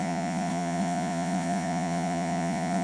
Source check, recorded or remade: remade